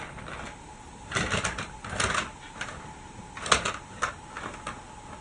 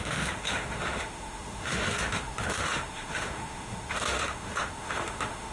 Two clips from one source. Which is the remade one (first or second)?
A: second